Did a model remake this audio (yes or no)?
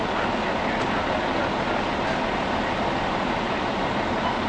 no